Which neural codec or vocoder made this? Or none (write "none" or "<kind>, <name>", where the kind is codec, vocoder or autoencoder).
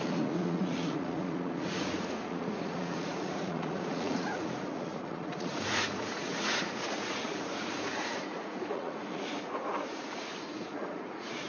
vocoder, Vocos